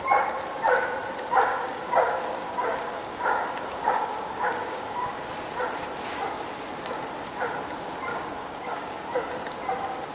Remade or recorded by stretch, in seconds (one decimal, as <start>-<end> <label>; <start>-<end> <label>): 0.0-1.5 recorded; 1.5-5.2 remade; 5.2-8.1 recorded; 8.1-9.0 remade; 9.0-10.1 recorded